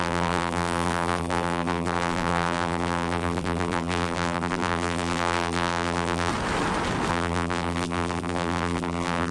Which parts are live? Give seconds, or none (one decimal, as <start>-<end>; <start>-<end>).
6.3-7.1